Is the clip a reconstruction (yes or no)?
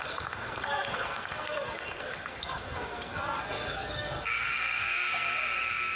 yes